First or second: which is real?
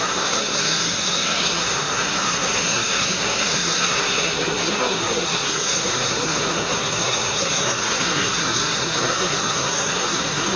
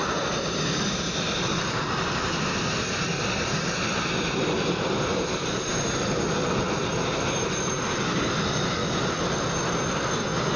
second